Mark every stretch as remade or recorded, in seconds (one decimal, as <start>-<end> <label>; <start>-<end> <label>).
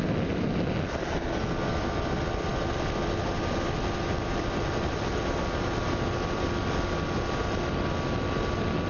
0.0-8.9 recorded